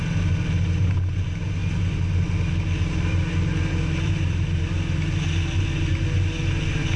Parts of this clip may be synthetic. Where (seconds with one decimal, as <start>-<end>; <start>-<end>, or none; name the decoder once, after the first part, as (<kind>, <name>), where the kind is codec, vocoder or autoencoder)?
none